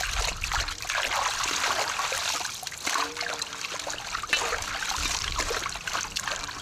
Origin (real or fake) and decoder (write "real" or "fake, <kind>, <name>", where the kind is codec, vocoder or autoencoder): real